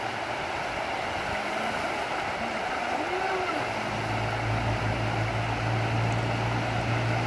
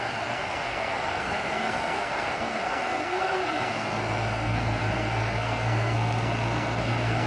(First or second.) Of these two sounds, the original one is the first